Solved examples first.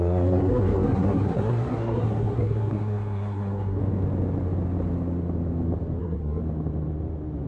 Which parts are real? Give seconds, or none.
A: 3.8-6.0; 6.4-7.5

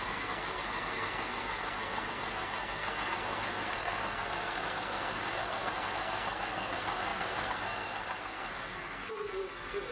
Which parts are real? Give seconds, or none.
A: none